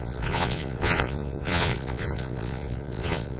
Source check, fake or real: fake